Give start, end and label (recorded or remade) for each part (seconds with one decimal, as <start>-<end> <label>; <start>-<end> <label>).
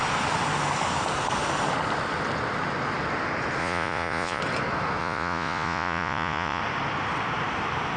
0.0-3.6 recorded; 3.6-4.4 remade; 4.4-5.0 recorded; 5.0-6.6 remade; 6.6-8.0 recorded